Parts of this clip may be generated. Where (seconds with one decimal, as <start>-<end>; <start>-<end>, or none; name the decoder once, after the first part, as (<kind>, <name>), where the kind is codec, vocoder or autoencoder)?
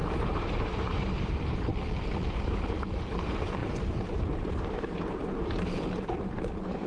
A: 0.0-1.7 (vocoder, BigVGAN v2); 2.3-6.9